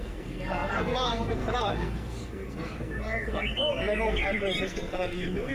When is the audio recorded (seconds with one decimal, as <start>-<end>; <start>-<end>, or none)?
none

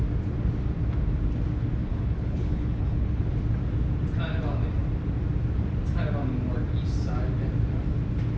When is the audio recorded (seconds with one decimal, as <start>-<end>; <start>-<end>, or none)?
0.0-1.8; 3.2-8.4

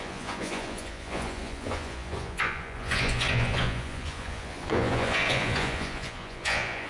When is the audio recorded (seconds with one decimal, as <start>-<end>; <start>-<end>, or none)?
none

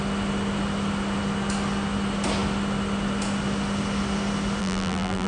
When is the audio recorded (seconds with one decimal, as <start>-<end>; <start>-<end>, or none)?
0.0-4.6